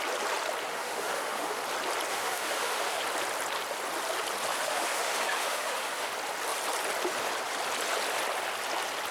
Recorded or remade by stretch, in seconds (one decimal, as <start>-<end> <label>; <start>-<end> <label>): 0.0-0.7 recorded; 0.7-1.6 remade; 1.6-2.1 recorded; 2.1-3.0 remade; 3.0-4.5 recorded; 4.5-6.1 remade; 6.1-9.1 recorded